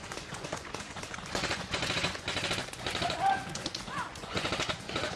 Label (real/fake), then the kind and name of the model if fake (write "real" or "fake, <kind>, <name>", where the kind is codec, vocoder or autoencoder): fake, vocoder, Vocos